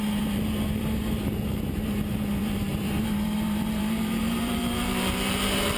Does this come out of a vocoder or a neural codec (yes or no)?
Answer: yes